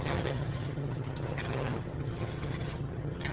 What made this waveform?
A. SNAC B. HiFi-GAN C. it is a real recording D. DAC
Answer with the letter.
B